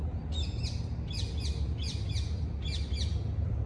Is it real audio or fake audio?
real